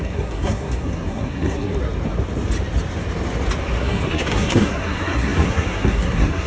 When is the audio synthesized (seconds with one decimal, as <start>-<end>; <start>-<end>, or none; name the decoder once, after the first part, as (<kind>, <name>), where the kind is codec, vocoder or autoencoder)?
0.0-1.7 (codec, SNAC); 3.8-6.5